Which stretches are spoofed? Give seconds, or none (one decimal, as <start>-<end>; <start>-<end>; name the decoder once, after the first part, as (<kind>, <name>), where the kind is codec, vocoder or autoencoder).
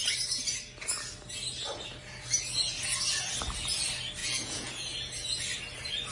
4.2-4.7 (vocoder, Vocos)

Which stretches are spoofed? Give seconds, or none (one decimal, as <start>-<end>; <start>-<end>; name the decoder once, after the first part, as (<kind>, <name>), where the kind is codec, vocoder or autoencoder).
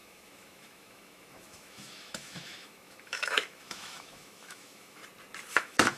0.0-5.0 (autoencoder, DAC-VAE); 5.5-6.0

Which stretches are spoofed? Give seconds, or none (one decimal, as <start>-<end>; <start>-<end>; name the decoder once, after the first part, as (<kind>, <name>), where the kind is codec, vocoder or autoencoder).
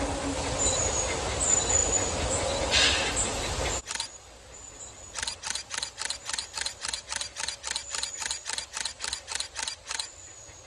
none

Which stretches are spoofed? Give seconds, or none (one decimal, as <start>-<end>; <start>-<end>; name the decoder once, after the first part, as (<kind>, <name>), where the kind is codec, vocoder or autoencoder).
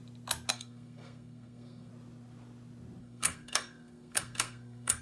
0.5-1.9 (codec, SNAC); 3.0-5.0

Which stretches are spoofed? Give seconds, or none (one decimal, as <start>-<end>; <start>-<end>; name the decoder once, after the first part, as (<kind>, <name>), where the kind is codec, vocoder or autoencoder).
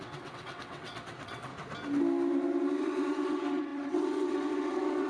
0.0-1.5 (vocoder, WaveNeXt); 2.8-5.1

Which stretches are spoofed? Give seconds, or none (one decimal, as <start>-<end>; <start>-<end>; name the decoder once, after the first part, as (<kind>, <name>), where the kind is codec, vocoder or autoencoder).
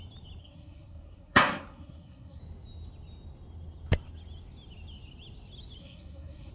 0.4-2.4 (codec, SNAC); 5.8-6.5